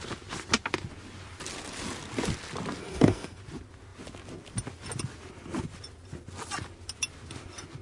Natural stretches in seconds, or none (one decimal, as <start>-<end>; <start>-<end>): 0.0-2.8; 3.4-7.8